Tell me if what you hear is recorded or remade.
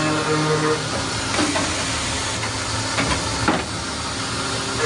recorded